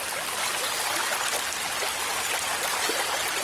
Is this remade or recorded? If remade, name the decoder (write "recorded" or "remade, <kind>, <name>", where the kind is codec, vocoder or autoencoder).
recorded